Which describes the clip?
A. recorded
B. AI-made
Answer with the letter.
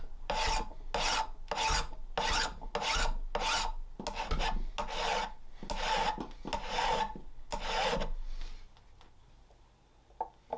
A